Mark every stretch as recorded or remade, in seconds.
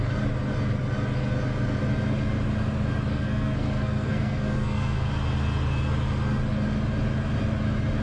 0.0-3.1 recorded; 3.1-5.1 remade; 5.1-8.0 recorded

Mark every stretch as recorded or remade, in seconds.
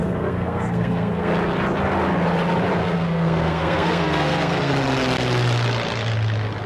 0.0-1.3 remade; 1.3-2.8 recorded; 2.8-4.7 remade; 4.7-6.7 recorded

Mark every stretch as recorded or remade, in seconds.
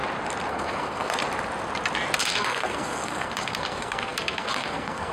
0.0-0.5 recorded; 0.5-1.2 remade; 1.2-2.2 recorded; 2.2-5.1 remade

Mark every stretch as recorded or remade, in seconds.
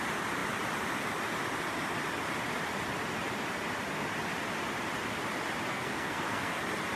0.0-5.7 recorded; 5.7-6.6 remade; 6.6-7.0 recorded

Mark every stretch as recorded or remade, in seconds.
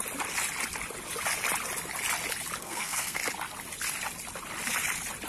0.0-2.6 recorded; 2.6-3.2 remade; 3.2-5.3 recorded